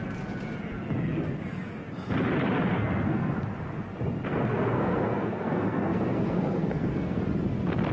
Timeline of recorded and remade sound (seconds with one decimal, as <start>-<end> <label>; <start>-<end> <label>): 0.0-2.7 recorded; 2.7-3.4 remade; 3.4-4.3 recorded; 4.3-7.2 remade; 7.2-7.9 recorded